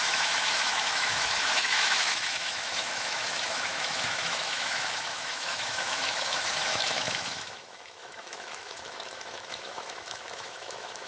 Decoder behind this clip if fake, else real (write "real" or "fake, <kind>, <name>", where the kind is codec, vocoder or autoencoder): fake, autoencoder, DAC-VAE